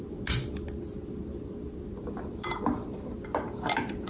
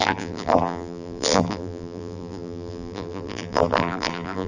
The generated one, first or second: second